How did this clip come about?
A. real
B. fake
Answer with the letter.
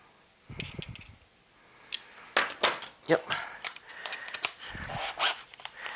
A